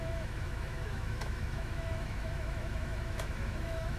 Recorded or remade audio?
remade